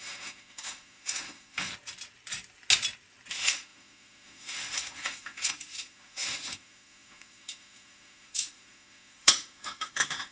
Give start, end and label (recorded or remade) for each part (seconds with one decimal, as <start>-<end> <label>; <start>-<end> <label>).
0.0-1.7 remade; 1.7-3.3 recorded; 3.3-10.3 remade